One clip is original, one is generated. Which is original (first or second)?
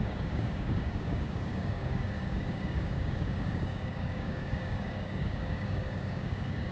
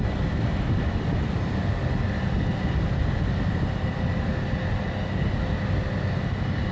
second